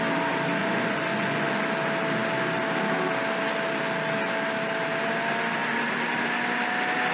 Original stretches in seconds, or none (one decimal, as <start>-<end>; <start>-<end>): 0.0-0.6; 1.6-7.1